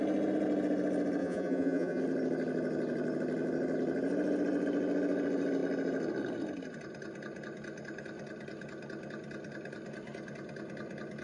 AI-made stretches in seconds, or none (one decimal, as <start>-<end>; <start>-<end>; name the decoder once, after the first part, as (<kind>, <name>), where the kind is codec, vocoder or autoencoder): 1.2-2.0 (vocoder, Vocos)